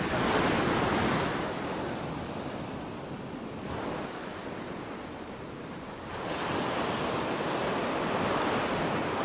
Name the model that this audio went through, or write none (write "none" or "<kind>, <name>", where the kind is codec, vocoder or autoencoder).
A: none